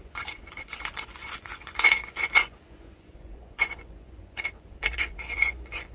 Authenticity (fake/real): fake